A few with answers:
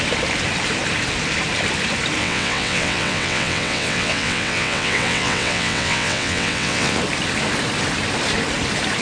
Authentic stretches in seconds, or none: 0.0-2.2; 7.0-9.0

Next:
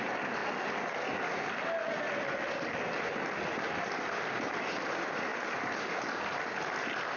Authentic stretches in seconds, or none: 0.0-7.2

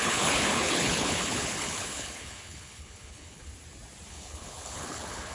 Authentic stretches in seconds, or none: 3.5-4.1

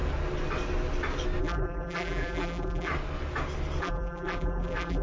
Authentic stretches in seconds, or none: 0.0-1.4; 2.9-3.8

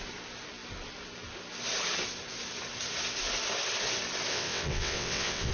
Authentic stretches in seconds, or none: 0.0-4.3

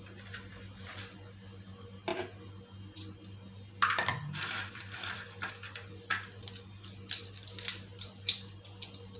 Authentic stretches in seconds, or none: 2.1-4.7

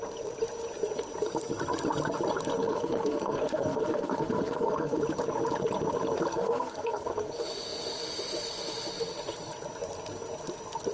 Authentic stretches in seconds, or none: 0.0-2.6; 5.0-6.3; 7.3-10.9

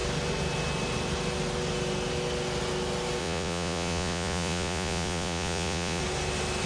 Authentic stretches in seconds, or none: 0.0-3.2; 6.0-6.7